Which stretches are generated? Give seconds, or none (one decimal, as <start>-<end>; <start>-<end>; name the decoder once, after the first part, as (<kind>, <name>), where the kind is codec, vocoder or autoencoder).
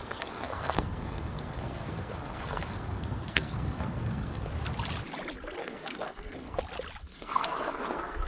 0.0-4.5 (codec, SNAC); 5.6-6.6; 7.0-8.3